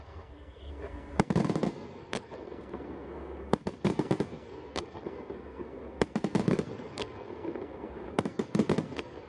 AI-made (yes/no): yes